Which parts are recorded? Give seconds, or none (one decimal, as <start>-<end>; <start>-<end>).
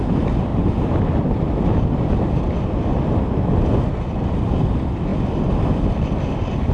0.0-6.7